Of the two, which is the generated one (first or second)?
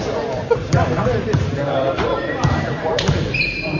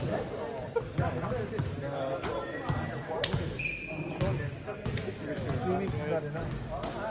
first